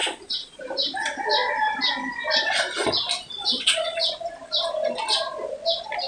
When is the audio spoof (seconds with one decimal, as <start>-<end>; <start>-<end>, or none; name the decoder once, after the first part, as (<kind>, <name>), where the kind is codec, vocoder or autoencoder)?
0.0-0.6 (vocoder, Vocos); 3.4-4.1